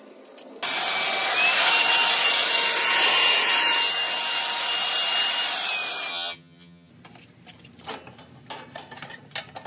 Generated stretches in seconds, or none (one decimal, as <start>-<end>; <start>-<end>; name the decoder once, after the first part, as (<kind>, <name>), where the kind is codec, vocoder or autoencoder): 6.1-6.9 (vocoder, HiFi-GAN)